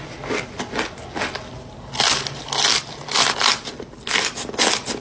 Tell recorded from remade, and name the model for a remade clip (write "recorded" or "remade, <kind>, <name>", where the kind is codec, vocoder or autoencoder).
recorded